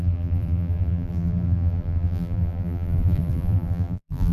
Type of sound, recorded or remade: remade